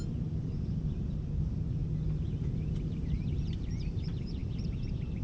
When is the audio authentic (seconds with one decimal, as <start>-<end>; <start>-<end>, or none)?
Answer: 1.8-2.9